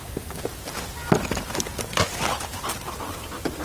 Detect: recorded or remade recorded